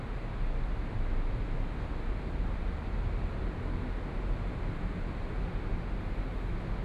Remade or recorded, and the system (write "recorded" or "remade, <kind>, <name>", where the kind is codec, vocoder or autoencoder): recorded